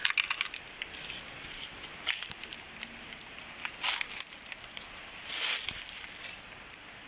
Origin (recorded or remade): recorded